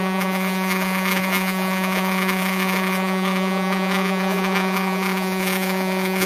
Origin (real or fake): fake